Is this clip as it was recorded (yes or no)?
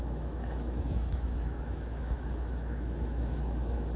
no